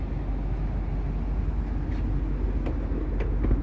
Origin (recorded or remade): recorded